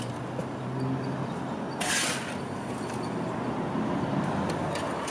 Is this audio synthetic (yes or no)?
no